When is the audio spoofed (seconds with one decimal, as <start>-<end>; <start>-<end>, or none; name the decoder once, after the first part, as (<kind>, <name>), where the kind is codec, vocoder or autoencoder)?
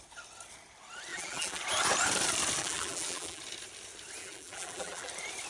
1.1-1.6 (vocoder, BigVGAN v2); 2.6-3.4; 4.2-5.1